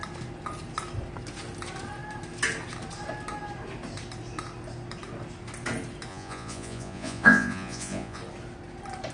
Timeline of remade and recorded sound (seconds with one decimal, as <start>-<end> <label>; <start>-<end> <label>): 0.0-6.1 recorded; 6.1-8.2 remade; 8.2-9.1 recorded

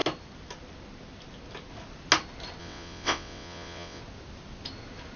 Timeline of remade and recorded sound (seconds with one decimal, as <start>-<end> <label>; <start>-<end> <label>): 0.0-2.6 recorded; 2.6-4.0 remade; 4.0-5.2 recorded

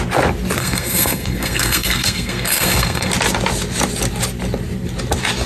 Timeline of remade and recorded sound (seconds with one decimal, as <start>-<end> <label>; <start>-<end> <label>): 0.0-0.6 recorded; 0.6-3.1 remade; 3.1-5.5 recorded

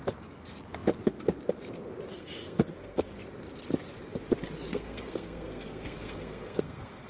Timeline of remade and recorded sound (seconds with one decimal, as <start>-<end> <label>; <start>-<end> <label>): 0.0-2.1 recorded; 2.1-3.1 remade; 3.1-4.7 recorded; 4.7-7.1 remade

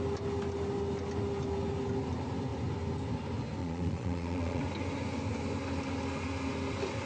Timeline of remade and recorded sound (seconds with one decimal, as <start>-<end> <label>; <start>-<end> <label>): 0.0-3.6 recorded; 3.6-4.6 remade; 4.6-7.1 recorded